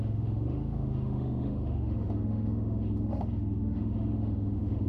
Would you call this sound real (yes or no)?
no